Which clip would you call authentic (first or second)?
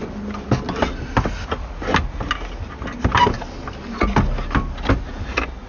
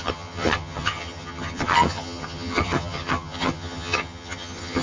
first